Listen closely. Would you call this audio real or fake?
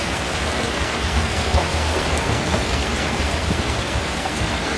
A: fake